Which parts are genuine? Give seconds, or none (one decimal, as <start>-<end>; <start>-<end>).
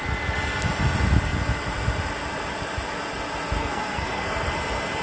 0.0-3.6; 4.5-5.0